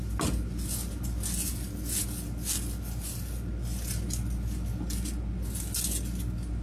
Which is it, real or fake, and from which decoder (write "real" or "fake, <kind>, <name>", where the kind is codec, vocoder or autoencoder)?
real